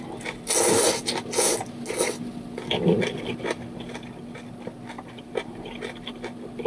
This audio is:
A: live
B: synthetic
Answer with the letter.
A